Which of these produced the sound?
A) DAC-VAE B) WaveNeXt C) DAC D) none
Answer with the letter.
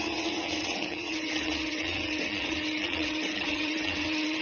B